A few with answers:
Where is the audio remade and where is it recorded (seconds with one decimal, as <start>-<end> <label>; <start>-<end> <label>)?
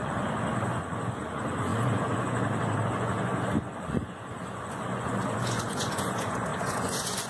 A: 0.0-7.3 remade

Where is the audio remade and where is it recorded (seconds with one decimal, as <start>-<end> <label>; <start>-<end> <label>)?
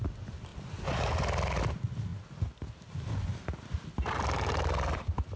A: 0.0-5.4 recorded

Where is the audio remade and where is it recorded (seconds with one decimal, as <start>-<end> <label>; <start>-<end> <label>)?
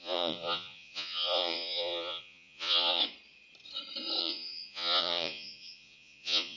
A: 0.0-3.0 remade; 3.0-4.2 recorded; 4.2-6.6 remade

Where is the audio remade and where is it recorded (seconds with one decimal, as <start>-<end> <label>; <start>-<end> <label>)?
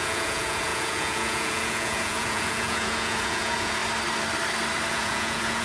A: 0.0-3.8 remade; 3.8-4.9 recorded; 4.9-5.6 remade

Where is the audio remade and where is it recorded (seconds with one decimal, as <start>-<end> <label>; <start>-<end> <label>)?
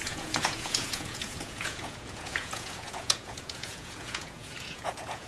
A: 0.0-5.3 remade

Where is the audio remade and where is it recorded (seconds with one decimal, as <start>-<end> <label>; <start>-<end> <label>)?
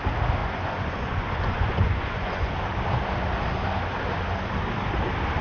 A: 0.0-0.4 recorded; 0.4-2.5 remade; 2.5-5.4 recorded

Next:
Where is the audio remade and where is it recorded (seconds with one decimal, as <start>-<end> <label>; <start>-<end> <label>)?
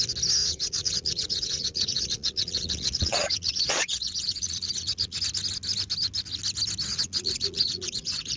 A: 0.0-0.4 recorded; 0.4-5.2 remade; 5.2-6.9 recorded; 6.9-8.4 remade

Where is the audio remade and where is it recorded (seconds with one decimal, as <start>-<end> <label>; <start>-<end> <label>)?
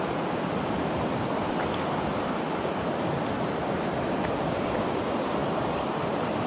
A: 0.0-6.5 recorded